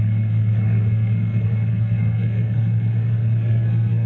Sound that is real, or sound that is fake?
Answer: fake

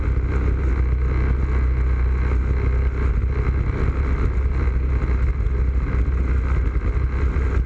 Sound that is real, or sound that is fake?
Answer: real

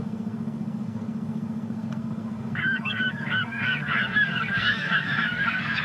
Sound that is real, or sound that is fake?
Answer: fake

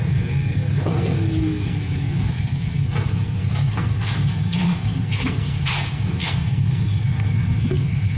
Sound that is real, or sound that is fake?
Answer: fake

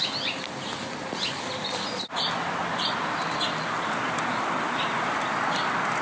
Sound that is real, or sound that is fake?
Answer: real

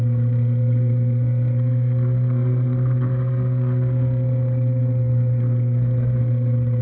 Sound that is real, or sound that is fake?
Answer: fake